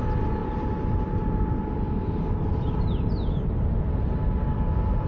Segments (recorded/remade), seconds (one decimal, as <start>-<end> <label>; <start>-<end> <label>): 0.0-5.1 recorded